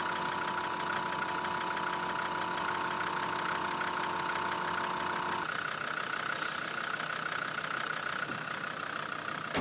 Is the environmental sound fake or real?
real